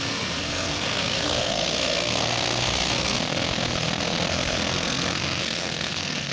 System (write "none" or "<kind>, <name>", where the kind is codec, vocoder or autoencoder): codec, SNAC